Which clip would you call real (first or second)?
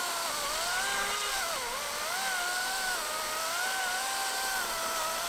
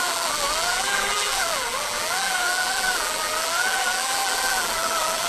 first